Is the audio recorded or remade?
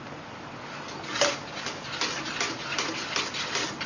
recorded